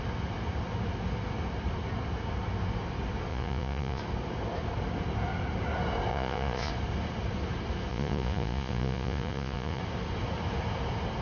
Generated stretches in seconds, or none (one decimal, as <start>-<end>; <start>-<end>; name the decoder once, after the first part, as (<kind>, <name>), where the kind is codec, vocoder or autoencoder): 3.3-4.0 (vocoder, Vocos); 6.1-6.7; 7.9-9.8